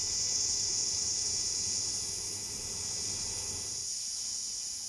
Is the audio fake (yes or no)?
no